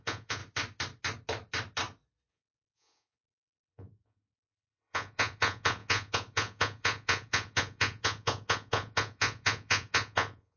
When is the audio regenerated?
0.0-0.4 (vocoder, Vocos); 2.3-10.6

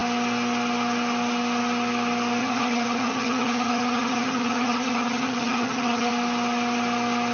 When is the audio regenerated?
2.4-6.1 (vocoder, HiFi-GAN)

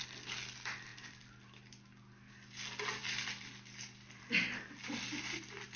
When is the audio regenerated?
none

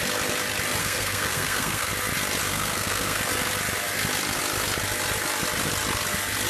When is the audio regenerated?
0.8-1.9 (codec, SNAC); 2.5-3.2

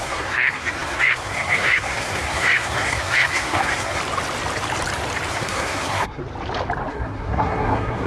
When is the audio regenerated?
0.0-4.0 (codec, SNAC); 5.3-6.2; 6.9-8.1